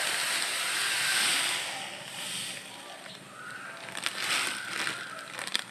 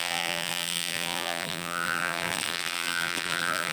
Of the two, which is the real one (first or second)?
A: first